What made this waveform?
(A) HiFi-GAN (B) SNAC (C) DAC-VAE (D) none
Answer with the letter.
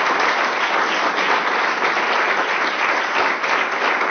D